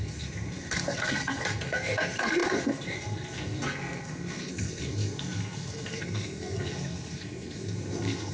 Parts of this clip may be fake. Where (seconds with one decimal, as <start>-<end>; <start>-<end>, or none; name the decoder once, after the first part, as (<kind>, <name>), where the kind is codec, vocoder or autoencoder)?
0.0-8.3 (codec, SNAC)